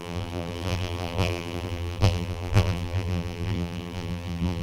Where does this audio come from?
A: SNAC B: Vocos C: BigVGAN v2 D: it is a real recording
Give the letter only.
C